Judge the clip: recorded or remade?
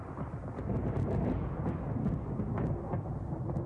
recorded